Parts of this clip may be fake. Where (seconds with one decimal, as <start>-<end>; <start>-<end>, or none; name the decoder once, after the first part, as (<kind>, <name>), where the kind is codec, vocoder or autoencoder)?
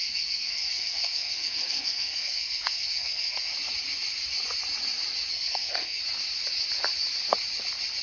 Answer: 0.0-3.5 (codec, SNAC); 5.3-6.0